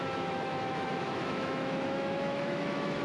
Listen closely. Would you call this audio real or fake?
fake